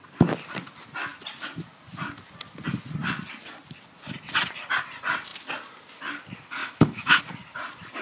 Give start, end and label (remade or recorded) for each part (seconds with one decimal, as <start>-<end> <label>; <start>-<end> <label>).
0.0-6.6 recorded; 6.6-7.2 remade; 7.2-8.0 recorded